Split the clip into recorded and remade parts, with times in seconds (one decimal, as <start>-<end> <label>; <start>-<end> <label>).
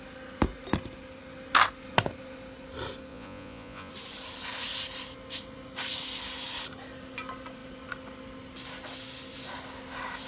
0.0-3.1 recorded; 3.1-3.9 remade; 3.9-10.3 recorded